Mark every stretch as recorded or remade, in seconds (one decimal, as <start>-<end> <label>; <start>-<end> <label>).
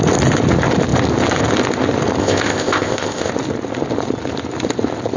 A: 0.0-2.2 recorded; 2.2-3.3 remade; 3.3-5.2 recorded